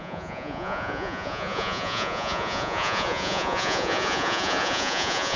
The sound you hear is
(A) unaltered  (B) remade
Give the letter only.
B